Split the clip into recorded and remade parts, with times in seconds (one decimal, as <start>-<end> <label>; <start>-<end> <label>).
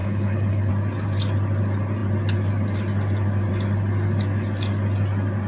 0.0-0.7 remade; 0.7-5.5 recorded